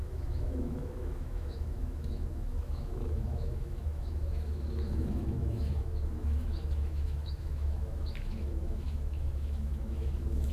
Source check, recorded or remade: remade